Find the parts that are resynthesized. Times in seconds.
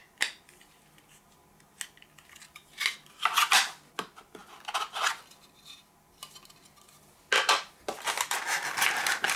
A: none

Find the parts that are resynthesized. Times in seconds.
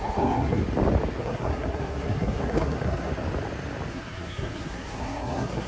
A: 0.0-0.6 (codec, SNAC); 1.2-3.1; 3.9-5.7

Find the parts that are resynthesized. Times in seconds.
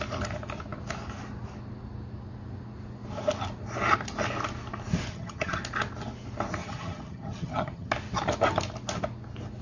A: 5.1-5.6 (vocoder, HiFi-GAN); 6.6-7.9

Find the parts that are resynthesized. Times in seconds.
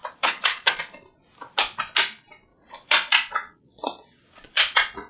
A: 0.0-0.7 (vocoder, Vocos); 2.5-5.1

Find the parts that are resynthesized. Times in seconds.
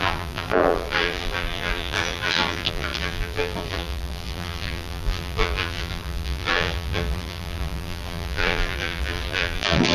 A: 0.0-9.9 (vocoder, BigVGAN v2)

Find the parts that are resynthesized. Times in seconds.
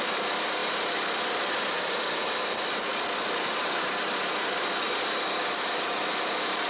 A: none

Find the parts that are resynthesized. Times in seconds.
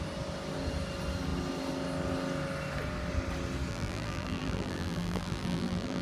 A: 3.7-6.0 (vocoder, BigVGAN v2)